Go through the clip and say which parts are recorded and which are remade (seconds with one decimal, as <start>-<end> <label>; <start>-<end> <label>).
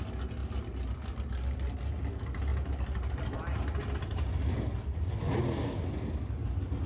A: 0.0-2.5 recorded; 2.5-5.3 remade; 5.3-6.9 recorded